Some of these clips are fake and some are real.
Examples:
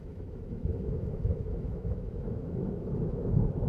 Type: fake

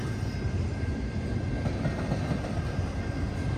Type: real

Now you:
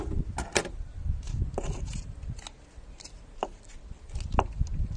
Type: real